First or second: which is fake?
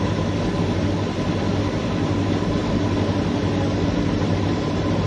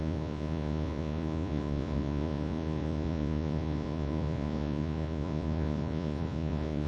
second